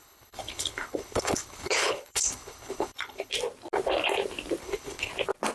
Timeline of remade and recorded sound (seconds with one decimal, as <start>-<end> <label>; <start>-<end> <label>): 0.0-3.3 remade; 3.3-4.6 recorded; 4.6-5.1 remade; 5.1-5.5 recorded